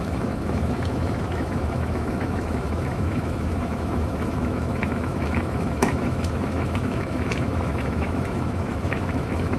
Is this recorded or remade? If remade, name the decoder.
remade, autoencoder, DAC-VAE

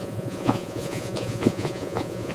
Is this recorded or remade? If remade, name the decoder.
remade, vocoder, Vocos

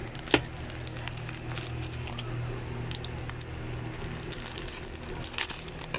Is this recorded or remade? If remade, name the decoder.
recorded